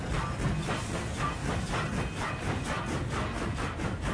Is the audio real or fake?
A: real